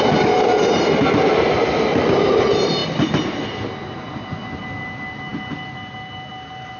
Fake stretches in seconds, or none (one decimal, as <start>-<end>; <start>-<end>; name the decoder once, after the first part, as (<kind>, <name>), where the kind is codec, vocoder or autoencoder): none

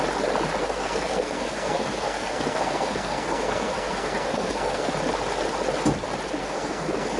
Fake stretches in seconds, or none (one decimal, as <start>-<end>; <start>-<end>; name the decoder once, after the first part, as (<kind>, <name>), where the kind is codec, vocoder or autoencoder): 0.6-4.9 (codec, SNAC); 6.4-7.2

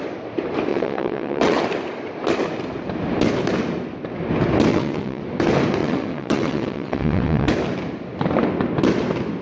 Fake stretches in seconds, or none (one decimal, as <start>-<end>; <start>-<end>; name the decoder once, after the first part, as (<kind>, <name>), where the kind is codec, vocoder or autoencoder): 0.7-1.6 (vocoder, WaveNeXt); 4.7-5.2; 5.8-7.5

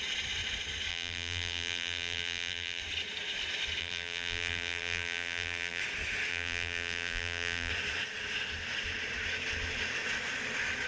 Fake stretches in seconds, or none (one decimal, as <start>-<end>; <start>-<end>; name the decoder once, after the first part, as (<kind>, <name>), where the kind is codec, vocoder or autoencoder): 0.9-2.8 (vocoder, BigVGAN v2); 3.8-5.8; 6.3-7.7

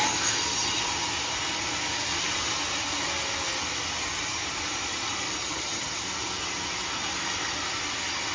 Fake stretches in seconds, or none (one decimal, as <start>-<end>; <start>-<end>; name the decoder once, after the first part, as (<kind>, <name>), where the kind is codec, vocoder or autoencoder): 5.4-6.0 (vocoder, HiFi-GAN)

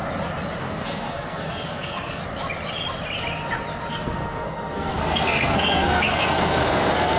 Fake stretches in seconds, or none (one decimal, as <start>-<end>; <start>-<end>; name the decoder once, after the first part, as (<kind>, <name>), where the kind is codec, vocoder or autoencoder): 0.6-2.2 (codec, SNAC); 3.9-7.2